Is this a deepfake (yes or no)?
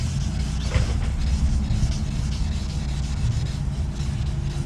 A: no